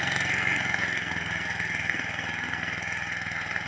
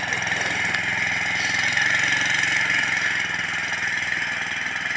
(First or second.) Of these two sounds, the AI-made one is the first